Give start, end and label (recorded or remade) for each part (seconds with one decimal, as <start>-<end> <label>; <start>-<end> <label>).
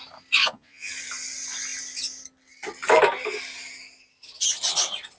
0.0-0.4 recorded; 0.4-0.9 remade; 0.9-5.2 recorded